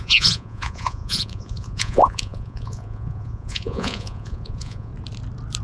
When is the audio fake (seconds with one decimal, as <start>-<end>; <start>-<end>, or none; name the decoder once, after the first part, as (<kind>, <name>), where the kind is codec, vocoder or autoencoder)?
0.0-4.9 (vocoder, Vocos)